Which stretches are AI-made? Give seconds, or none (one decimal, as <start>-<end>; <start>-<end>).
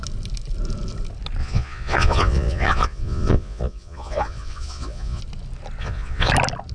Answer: 1.4-5.2; 5.8-6.3